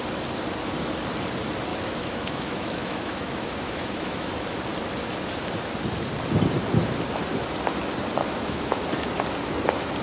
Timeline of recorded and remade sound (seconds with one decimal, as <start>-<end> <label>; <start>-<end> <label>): 0.0-1.7 recorded; 1.7-4.3 remade; 4.3-8.2 recorded; 8.2-8.8 remade; 8.8-10.0 recorded